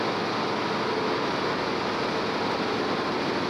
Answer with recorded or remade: recorded